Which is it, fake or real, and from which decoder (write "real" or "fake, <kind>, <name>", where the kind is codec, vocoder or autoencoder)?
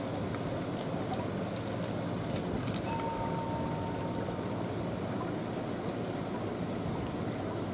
real